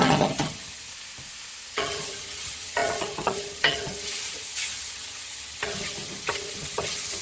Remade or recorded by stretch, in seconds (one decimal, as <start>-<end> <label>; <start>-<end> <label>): 0.0-0.9 remade; 0.9-1.7 recorded; 1.7-7.2 remade